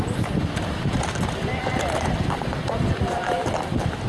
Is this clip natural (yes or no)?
yes